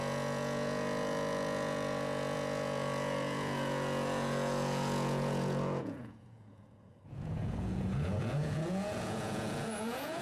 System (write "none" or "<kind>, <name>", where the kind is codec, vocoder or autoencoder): vocoder, Vocos